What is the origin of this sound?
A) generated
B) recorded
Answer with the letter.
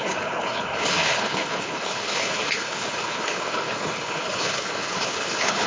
A